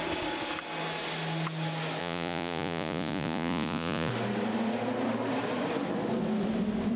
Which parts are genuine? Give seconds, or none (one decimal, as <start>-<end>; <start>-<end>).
0.0-2.0; 4.1-7.0